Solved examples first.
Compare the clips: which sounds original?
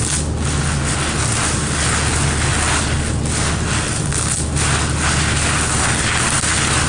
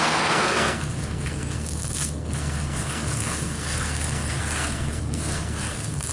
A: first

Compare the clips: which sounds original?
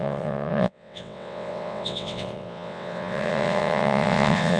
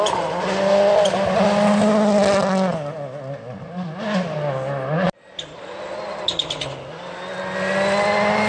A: second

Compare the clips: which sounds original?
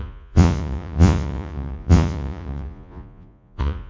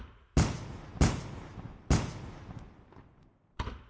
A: second